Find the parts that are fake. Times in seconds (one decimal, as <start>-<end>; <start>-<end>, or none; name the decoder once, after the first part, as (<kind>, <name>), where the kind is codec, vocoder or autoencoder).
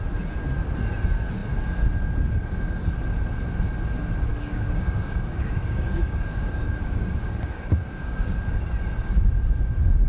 4.3-8.6 (codec, DAC)